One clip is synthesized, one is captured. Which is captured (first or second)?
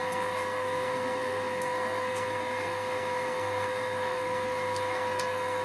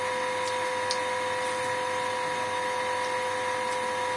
second